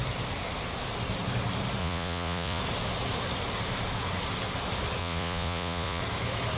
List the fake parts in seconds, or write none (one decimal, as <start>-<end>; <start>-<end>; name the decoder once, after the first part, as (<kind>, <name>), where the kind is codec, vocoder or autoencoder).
1.8-2.6 (vocoder, Vocos); 5.0-6.0